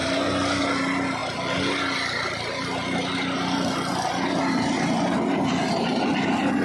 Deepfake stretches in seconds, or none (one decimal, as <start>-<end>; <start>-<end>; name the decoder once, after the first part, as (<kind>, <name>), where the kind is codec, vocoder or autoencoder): none